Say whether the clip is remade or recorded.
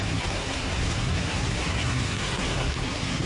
remade